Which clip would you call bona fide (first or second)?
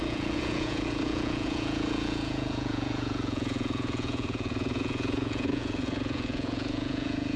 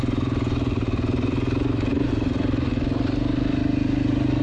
second